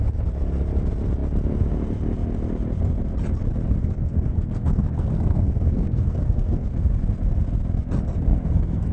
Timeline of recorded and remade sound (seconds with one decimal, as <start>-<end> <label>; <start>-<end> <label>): 0.0-3.8 recorded; 3.8-6.7 remade; 6.7-8.3 recorded; 8.3-8.9 remade